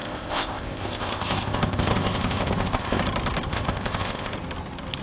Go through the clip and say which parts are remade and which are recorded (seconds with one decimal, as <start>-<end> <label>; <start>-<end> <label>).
0.0-3.0 remade; 3.0-3.5 recorded; 3.5-4.3 remade; 4.3-5.0 recorded